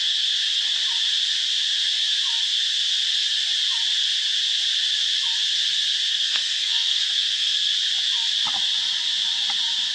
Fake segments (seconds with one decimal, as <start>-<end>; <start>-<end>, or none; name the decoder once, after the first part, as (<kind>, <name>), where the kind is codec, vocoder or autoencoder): 6.1-7.7 (codec, SNAC)